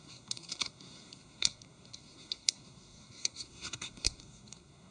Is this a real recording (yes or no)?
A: no